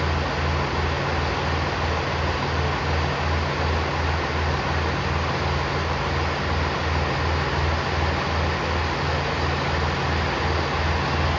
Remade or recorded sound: recorded